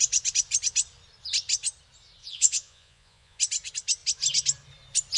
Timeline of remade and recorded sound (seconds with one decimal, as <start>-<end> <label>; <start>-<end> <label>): 0.0-2.2 recorded; 2.2-3.4 remade; 3.4-5.2 recorded